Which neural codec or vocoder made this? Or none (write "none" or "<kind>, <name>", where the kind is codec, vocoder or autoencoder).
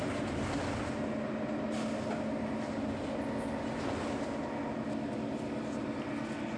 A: none